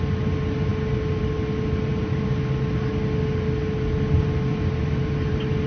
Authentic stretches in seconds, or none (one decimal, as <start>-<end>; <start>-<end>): 0.0-5.7